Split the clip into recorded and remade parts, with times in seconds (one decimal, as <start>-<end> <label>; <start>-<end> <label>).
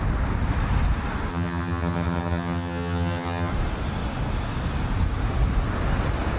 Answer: 0.0-1.3 recorded; 1.3-3.5 remade; 3.5-6.4 recorded